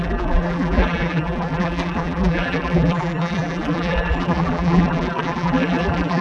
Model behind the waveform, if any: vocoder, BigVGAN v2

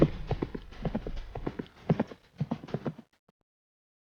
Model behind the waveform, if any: none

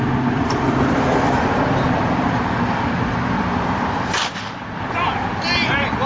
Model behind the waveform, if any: vocoder, BigVGAN v2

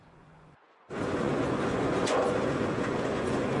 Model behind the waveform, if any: vocoder, Vocos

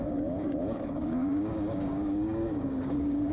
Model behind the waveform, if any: codec, DAC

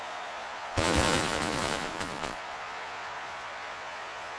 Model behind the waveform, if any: vocoder, Vocos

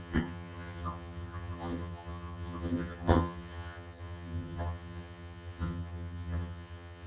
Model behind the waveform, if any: vocoder, HiFi-GAN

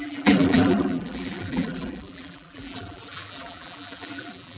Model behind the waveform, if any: vocoder, BigVGAN v2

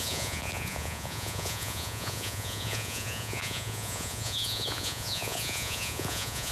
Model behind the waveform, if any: vocoder, Vocos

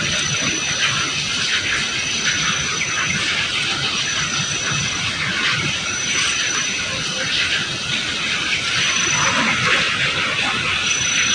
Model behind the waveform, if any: none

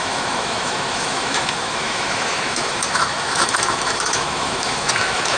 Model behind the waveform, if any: autoencoder, DAC-VAE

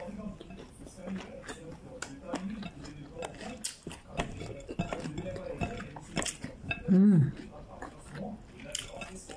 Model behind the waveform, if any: none